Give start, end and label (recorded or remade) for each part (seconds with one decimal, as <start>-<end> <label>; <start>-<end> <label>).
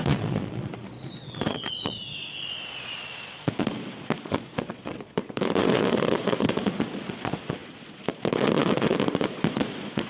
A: 0.0-10.1 remade